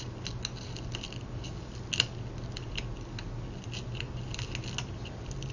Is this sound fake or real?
real